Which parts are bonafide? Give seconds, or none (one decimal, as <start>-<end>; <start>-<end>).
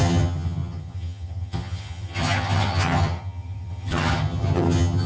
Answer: none